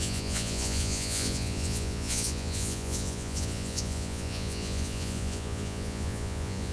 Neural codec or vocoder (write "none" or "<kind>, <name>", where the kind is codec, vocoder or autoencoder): vocoder, Vocos